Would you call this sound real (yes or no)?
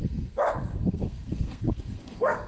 no